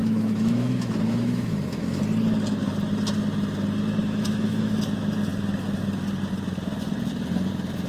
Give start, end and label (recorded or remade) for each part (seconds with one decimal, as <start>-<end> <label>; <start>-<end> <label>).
0.0-2.0 remade; 2.0-4.0 recorded; 4.0-4.8 remade; 4.8-7.9 recorded